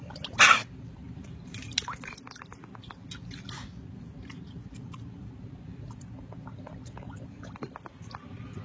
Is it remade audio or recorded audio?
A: recorded